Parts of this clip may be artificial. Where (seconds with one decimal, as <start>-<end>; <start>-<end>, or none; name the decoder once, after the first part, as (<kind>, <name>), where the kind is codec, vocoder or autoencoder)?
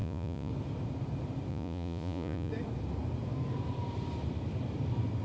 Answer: 0.0-0.5 (vocoder, Vocos); 1.5-2.5